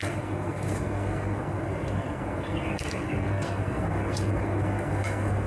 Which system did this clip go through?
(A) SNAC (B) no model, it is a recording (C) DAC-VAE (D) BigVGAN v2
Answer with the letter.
A